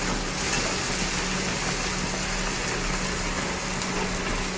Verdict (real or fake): real